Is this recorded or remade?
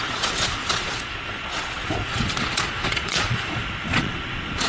remade